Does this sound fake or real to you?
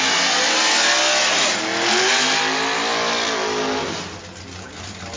real